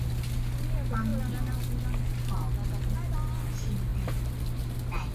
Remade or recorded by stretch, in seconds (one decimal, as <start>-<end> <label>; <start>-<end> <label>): 0.0-5.1 recorded

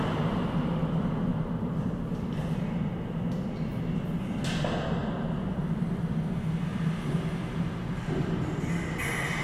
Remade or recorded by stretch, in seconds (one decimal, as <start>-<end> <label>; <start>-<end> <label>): 0.0-1.3 recorded; 1.3-2.9 remade; 2.9-3.7 recorded; 3.7-4.2 remade; 4.2-5.0 recorded; 5.0-5.6 remade; 5.6-6.7 recorded; 6.7-8.5 remade; 8.5-9.4 recorded

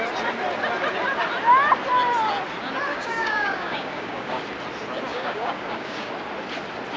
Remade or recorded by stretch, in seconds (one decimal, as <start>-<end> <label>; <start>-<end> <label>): 0.0-2.9 recorded; 2.9-4.4 remade; 4.4-5.1 recorded; 5.1-6.1 remade; 6.1-7.0 recorded

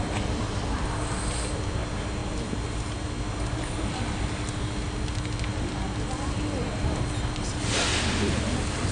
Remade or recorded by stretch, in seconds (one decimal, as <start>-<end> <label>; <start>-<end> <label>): 0.0-8.9 recorded

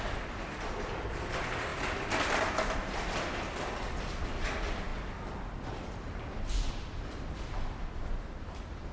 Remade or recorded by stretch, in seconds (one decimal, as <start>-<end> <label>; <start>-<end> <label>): 0.0-8.9 recorded

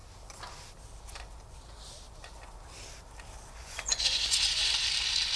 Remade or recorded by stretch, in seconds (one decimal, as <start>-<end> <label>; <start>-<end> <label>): 0.0-3.6 recorded; 3.6-4.7 remade; 4.7-5.4 recorded

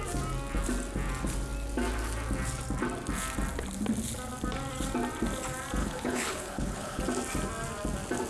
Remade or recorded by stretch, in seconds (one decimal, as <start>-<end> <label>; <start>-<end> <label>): 0.0-5.8 recorded; 5.8-7.0 remade; 7.0-8.3 recorded